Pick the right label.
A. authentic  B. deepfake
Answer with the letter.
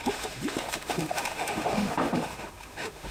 B